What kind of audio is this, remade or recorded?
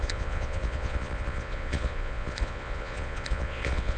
remade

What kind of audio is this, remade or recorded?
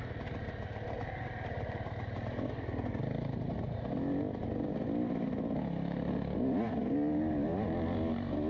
recorded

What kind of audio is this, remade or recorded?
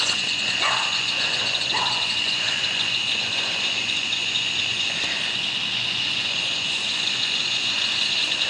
remade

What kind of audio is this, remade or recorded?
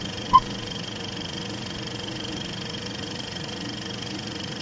remade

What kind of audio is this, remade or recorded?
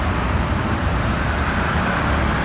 recorded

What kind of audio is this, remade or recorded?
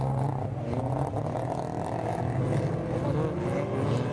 recorded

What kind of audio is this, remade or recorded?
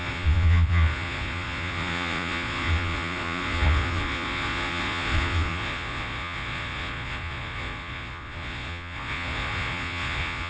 remade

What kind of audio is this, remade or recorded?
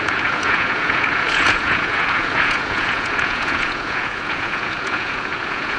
remade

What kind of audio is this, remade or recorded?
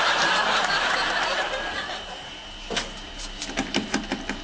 recorded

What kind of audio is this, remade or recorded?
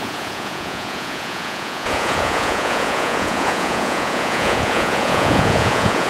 remade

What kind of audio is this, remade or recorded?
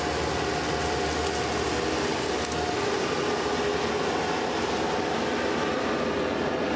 recorded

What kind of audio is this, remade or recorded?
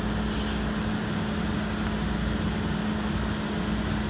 recorded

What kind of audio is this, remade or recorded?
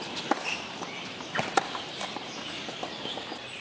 recorded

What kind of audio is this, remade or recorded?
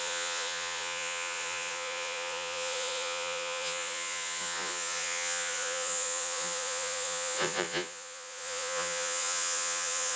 remade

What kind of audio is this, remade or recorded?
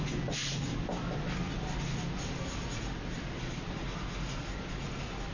recorded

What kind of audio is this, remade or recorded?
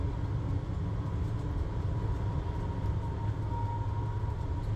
recorded